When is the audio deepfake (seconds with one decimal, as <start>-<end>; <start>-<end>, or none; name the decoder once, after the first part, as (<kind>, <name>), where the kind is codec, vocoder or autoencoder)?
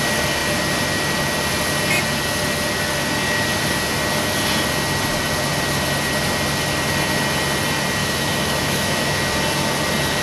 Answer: 8.0-9.2 (autoencoder, DAC-VAE)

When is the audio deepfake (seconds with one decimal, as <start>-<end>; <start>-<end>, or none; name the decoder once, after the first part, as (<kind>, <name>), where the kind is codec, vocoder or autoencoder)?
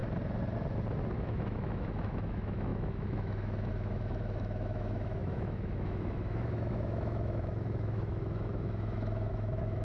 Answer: 1.1-9.8 (autoencoder, DAC-VAE)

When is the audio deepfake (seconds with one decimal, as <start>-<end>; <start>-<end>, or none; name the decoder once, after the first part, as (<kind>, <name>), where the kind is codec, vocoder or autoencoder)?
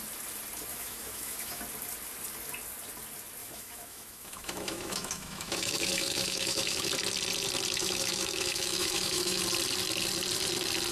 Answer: 0.7-1.6 (autoencoder, DAC-VAE); 3.4-6.9; 7.8-9.4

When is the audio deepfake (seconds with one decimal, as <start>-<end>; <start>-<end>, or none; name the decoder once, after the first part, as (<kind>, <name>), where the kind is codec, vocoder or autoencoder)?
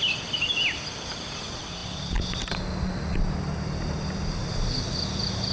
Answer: none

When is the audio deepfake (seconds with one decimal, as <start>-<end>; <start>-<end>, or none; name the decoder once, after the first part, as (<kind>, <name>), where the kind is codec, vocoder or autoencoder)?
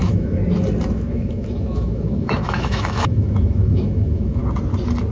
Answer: 0.0-0.4 (autoencoder, DAC-VAE); 0.9-4.4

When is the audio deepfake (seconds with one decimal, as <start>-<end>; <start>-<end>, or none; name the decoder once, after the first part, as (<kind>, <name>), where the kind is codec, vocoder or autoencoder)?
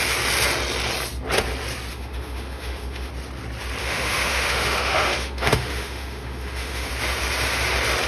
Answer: 1.9-3.1 (autoencoder, DAC-VAE); 3.8-6.9